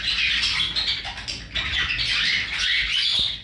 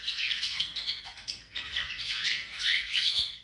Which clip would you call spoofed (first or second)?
second